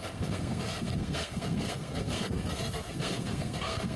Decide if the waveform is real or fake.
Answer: fake